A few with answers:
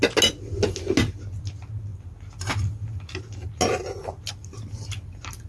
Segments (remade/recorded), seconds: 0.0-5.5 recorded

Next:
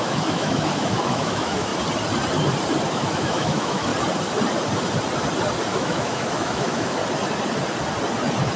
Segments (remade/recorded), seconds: 0.0-1.7 remade; 1.7-2.9 recorded; 2.9-3.9 remade; 3.9-5.7 recorded; 5.7-7.0 remade; 7.0-8.6 recorded

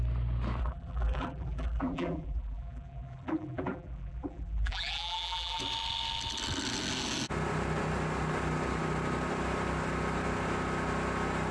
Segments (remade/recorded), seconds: 0.0-0.6 recorded; 0.6-5.6 remade; 5.6-11.5 recorded

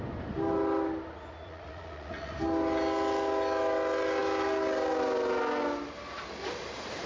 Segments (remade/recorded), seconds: 0.0-1.4 recorded; 1.4-2.3 remade; 2.3-7.1 recorded

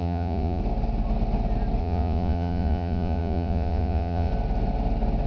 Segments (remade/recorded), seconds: 0.0-0.6 remade; 0.6-1.8 recorded; 1.8-4.3 remade; 4.3-5.3 recorded

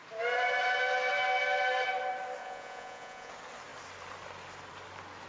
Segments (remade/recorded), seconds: 0.0-2.4 recorded; 2.4-3.3 remade; 3.3-5.3 recorded

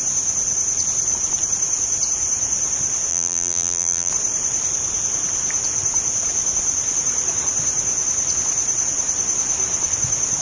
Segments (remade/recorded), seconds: 0.0-3.1 recorded; 3.1-4.1 remade; 4.1-10.4 recorded